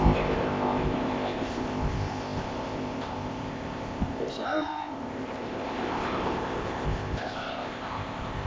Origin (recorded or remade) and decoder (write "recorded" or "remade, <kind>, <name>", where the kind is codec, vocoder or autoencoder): remade, codec, ZipCodec